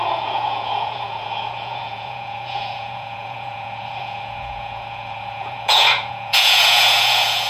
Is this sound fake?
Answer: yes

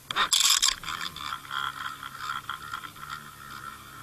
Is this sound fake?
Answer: no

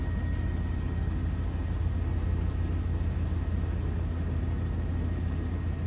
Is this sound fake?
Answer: no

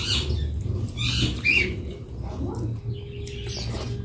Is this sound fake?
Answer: no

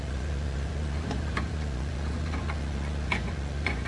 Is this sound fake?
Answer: yes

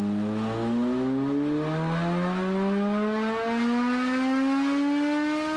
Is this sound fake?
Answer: no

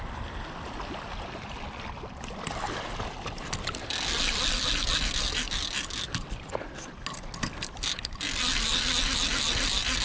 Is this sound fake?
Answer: no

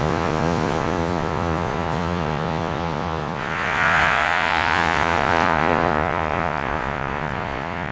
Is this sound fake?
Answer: yes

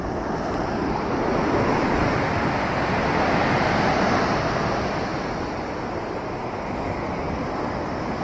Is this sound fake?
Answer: no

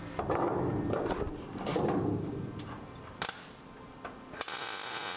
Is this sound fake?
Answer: no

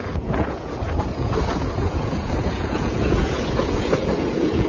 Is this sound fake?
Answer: yes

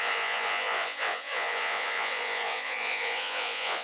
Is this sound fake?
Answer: yes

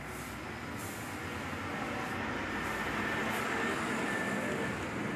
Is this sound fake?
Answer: no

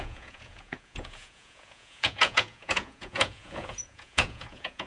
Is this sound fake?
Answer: yes